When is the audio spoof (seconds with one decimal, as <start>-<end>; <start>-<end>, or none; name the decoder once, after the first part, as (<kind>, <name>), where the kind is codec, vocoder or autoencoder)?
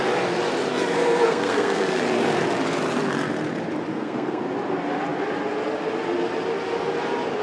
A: 0.9-2.0 (codec, SNAC); 3.9-4.4